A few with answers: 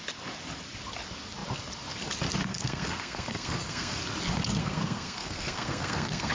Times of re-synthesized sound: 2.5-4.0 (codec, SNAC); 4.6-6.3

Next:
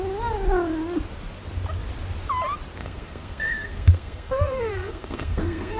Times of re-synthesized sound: 2.8-5.8 (codec, SNAC)

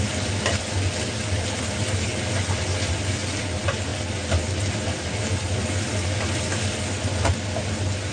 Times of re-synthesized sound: none

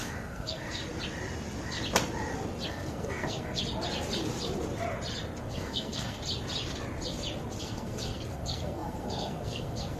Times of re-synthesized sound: 0.0-0.8 (codec, SNAC); 2.7-3.6; 5.4-6.2; 7.6-10.0